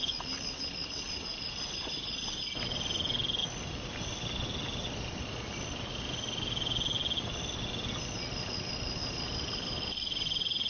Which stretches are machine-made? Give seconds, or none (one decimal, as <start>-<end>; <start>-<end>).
none